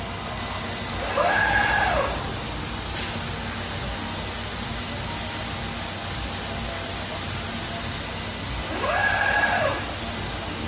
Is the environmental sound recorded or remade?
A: recorded